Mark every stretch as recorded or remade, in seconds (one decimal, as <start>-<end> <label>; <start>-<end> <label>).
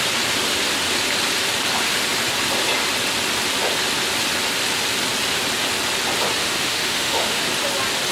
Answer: 0.0-6.4 recorded; 6.4-7.4 remade; 7.4-8.1 recorded